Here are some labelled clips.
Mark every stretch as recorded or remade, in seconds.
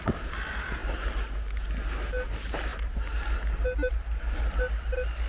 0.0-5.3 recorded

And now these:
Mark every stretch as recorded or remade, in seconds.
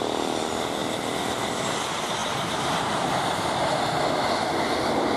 0.0-2.2 recorded; 2.2-4.0 remade; 4.0-5.2 recorded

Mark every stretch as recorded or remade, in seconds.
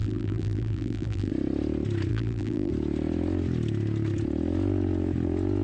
0.0-1.3 remade; 1.3-2.1 recorded; 2.1-2.7 remade; 2.7-5.6 recorded